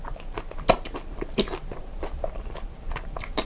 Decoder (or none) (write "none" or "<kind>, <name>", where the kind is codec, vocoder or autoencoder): none